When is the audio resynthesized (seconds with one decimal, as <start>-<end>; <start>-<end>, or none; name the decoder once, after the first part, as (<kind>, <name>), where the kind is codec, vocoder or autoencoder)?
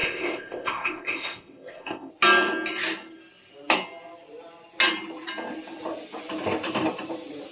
0.0-2.1 (codec, ZipCodec)